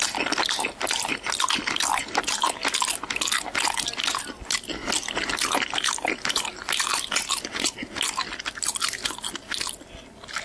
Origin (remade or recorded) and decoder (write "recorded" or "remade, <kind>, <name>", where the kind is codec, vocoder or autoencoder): recorded